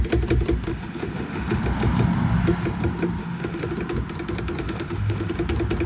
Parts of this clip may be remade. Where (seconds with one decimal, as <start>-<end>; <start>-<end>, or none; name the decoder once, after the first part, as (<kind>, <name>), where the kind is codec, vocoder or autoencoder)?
0.7-1.6 (autoencoder, DAC-VAE); 3.2-3.7; 4.6-5.3